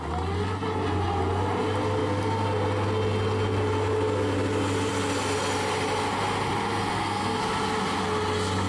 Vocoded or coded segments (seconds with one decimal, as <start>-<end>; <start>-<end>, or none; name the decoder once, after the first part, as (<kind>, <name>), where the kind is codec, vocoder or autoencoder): 6.9-7.4 (codec, SNAC)